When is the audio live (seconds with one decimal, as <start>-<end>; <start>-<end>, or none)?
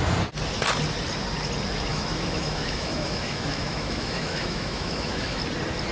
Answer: 0.0-1.9; 5.4-5.9